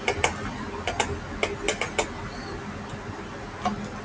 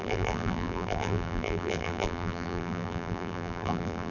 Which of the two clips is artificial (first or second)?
second